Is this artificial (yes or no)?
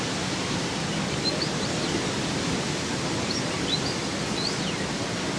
yes